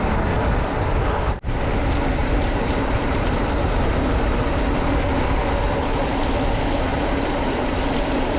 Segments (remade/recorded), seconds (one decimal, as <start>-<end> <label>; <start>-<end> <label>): 0.0-2.2 recorded; 2.2-3.9 remade; 3.9-6.9 recorded; 6.9-8.4 remade